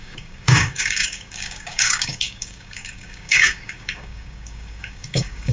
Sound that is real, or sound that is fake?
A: fake